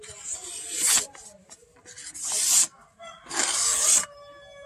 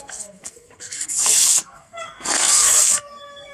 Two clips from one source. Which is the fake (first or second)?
second